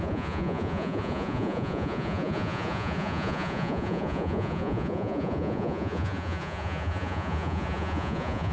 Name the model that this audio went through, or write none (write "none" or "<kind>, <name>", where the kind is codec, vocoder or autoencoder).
vocoder, Vocos